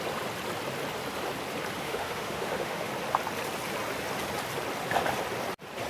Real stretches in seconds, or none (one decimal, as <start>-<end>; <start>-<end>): 0.0-1.8; 2.9-5.9